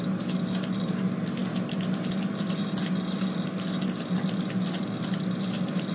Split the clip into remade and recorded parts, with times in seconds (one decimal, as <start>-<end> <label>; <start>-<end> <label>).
0.0-5.9 recorded